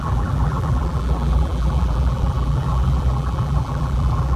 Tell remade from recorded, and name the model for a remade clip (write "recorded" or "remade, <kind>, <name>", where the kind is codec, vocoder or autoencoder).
remade, vocoder, BigVGAN v2